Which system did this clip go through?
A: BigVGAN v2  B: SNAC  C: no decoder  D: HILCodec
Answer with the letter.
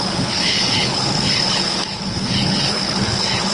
D